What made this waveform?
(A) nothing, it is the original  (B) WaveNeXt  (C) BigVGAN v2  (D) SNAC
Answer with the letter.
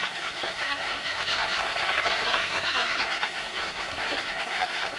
D